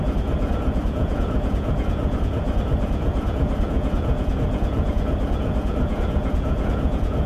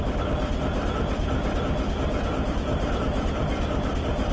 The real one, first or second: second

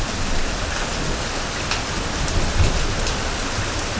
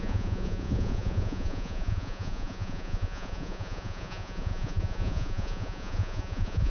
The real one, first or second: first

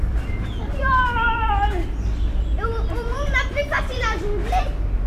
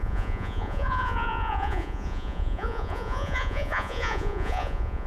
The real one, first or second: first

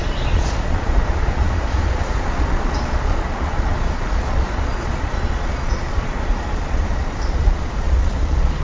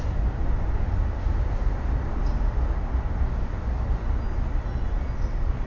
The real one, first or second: second